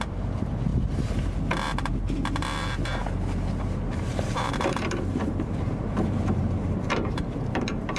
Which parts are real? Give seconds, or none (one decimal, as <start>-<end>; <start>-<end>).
0.7-3.6